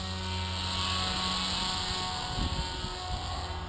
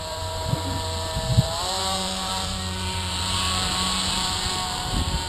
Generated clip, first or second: second